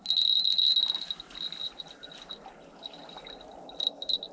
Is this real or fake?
real